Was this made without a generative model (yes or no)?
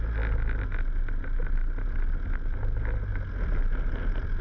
yes